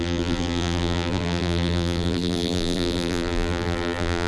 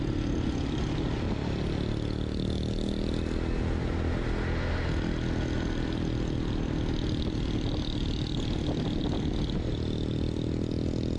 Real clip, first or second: second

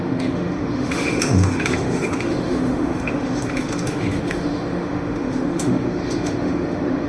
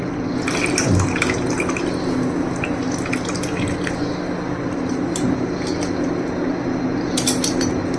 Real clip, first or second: second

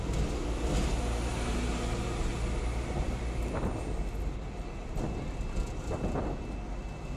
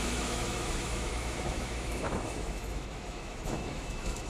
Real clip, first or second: first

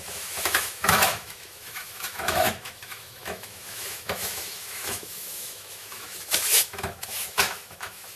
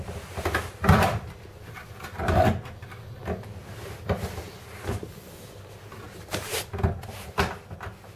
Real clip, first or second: second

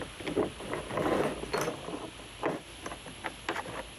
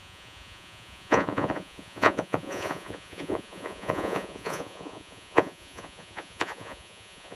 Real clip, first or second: first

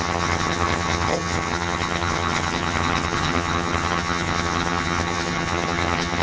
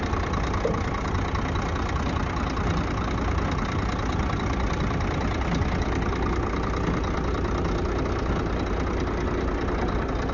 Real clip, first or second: second